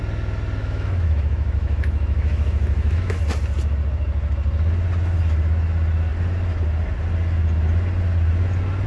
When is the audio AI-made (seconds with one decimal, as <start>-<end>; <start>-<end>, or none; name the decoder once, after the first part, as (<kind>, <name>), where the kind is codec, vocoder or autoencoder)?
0.6-3.2 (autoencoder, DAC-VAE)